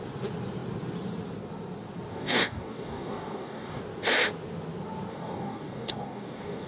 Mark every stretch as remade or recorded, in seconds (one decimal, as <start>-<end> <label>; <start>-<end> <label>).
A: 0.0-2.1 recorded; 2.1-3.8 remade; 3.8-5.1 recorded; 5.1-6.7 remade